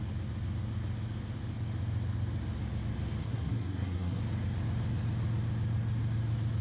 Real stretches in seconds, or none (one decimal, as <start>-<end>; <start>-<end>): 0.0-3.2; 4.2-6.6

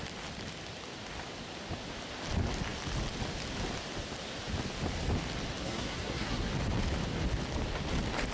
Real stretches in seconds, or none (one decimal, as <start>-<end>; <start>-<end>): 0.0-5.6; 6.5-8.3

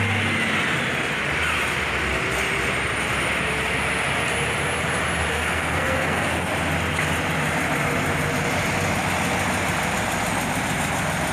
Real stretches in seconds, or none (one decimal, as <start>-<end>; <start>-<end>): 0.0-5.3; 6.5-11.3

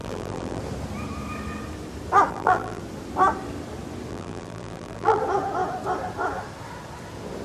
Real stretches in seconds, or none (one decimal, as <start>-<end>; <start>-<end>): 0.6-2.3; 2.8-4.1; 5.2-7.4

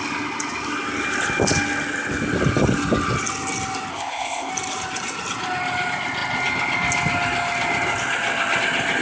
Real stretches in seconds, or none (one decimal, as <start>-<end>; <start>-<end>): 0.0-3.9; 4.5-9.0

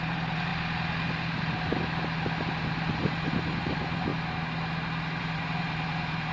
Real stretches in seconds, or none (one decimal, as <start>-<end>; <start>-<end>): 0.5-2.9; 4.1-5.2

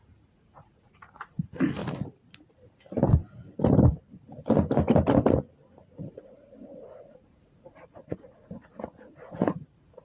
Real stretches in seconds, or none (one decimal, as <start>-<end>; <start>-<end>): 1.8-6.0